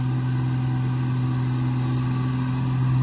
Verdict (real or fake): real